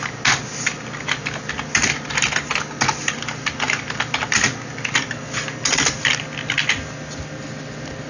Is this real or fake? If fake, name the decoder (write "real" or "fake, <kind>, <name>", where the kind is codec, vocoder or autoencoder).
real